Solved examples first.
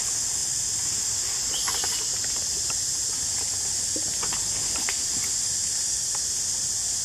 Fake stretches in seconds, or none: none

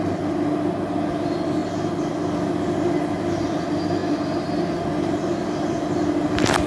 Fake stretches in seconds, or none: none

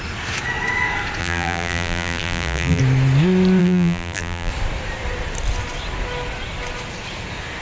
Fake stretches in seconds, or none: 1.2-2.8 (vocoder, BigVGAN v2); 3.6-4.5

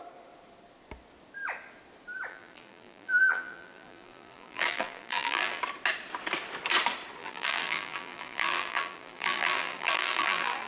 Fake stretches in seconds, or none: 2.3-5.6 (vocoder, BigVGAN v2); 7.2-10.7